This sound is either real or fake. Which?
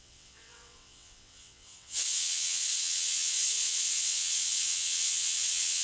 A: fake